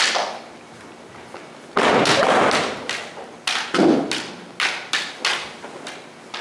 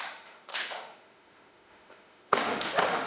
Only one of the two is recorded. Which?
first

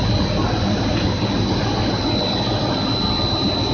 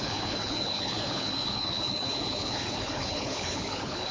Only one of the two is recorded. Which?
first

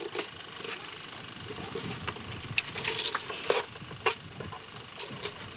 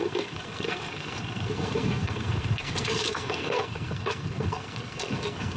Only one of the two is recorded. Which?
first